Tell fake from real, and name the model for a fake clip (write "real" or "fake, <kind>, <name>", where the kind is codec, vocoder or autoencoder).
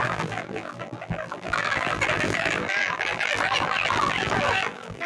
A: fake, vocoder, BigVGAN v2